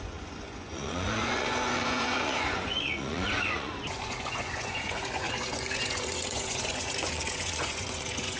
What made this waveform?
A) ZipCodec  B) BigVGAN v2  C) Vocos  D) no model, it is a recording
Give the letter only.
C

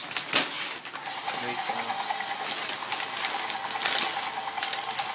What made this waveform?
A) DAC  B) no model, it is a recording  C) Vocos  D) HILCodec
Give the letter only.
B